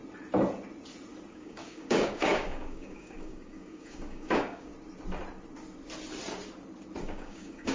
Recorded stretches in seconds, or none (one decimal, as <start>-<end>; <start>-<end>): 0.0-1.3; 4.7-7.0